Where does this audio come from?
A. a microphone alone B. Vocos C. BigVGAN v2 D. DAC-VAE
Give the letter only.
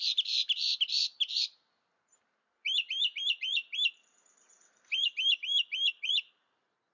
C